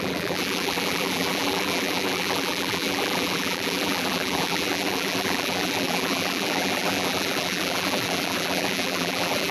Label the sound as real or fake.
fake